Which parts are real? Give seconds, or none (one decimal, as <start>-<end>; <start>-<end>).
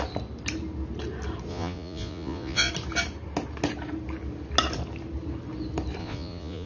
0.0-1.5; 2.7-6.0